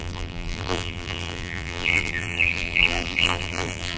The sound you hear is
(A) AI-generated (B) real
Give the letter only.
A